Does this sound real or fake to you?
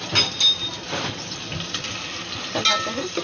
real